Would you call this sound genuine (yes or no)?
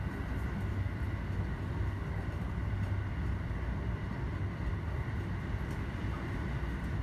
yes